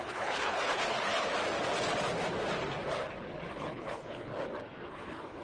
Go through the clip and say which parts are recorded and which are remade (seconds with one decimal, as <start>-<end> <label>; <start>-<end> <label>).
0.0-1.1 remade; 1.1-3.5 recorded; 3.5-4.3 remade; 4.3-4.9 recorded; 4.9-5.4 remade